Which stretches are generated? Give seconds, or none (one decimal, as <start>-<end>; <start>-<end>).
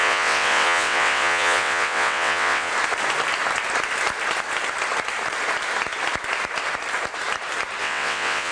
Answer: 0.0-2.7; 7.8-8.5